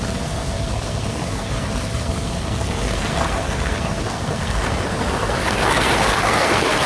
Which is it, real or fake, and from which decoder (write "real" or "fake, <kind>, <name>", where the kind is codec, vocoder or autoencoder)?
fake, codec, SNAC